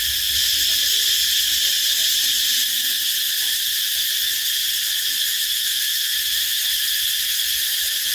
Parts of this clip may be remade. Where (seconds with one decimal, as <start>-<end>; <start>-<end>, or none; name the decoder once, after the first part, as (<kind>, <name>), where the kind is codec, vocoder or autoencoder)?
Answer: 5.3-6.6 (autoencoder, DAC-VAE)